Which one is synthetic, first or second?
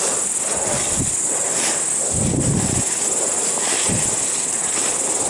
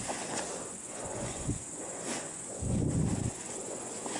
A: second